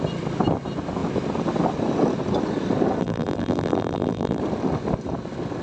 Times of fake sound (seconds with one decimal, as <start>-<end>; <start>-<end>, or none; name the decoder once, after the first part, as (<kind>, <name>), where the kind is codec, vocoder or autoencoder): 3.0-4.4 (vocoder, BigVGAN v2)